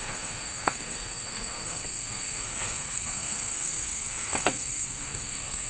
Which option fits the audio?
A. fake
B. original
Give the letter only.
A